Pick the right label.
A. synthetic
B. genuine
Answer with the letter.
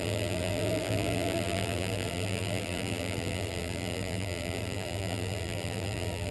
A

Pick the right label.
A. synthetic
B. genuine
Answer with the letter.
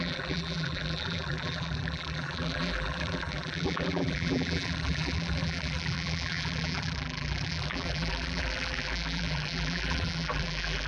A